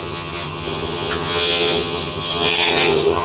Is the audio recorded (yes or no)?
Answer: no